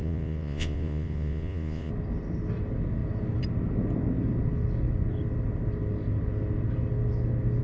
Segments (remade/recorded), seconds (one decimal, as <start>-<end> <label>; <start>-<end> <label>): 0.0-1.9 remade; 1.9-7.6 recorded